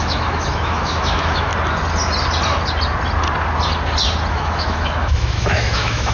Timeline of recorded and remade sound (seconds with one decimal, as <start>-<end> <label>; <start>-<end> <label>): 0.0-1.5 remade; 1.5-4.3 recorded; 4.3-6.1 remade